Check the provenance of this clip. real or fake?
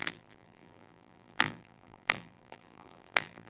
fake